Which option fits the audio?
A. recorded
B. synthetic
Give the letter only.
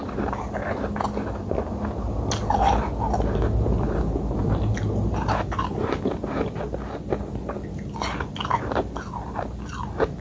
A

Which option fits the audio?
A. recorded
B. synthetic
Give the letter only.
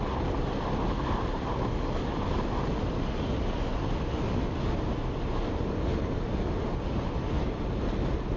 A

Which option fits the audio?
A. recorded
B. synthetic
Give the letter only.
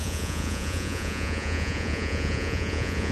B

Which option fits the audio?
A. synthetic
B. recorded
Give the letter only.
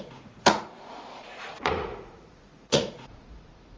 A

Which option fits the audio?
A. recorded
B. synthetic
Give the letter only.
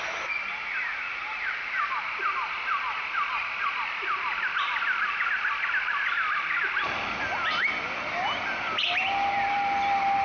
A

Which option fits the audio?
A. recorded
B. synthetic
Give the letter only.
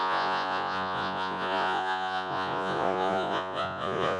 B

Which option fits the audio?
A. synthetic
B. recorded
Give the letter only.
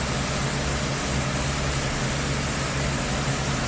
B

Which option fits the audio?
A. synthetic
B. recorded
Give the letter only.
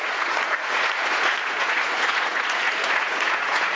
A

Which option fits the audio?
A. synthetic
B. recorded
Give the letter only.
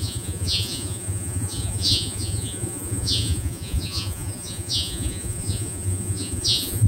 A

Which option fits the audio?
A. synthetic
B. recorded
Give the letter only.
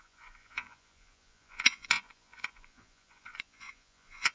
A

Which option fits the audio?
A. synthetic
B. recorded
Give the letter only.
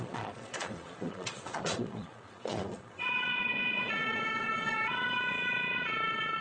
A